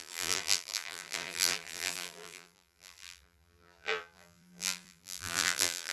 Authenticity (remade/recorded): remade